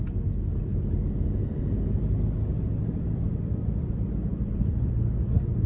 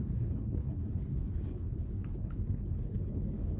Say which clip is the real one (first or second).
first